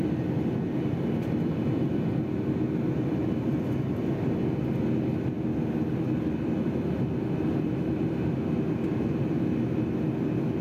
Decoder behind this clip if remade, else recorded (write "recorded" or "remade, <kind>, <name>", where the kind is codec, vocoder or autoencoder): recorded